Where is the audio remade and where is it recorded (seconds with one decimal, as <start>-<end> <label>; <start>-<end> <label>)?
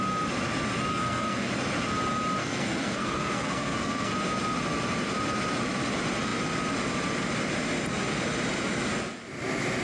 0.0-0.9 recorded; 0.9-1.5 remade; 1.5-2.4 recorded; 2.4-4.1 remade; 4.1-9.8 recorded